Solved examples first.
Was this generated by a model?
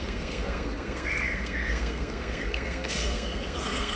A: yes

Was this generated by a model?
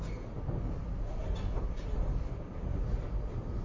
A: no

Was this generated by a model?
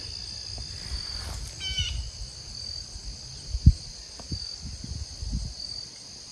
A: no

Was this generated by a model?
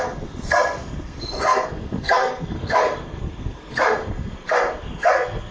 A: yes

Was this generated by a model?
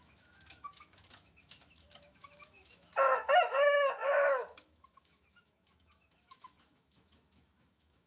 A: yes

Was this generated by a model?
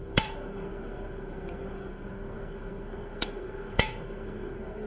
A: yes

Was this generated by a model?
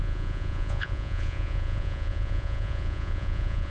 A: yes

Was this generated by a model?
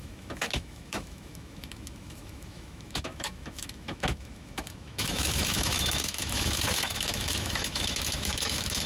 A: yes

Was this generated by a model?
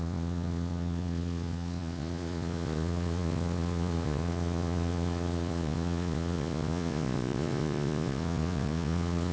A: yes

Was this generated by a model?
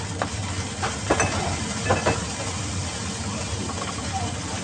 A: no